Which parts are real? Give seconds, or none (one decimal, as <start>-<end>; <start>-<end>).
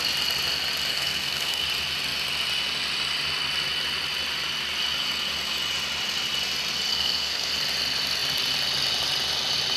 0.0-0.9; 1.6-6.9; 7.5-9.8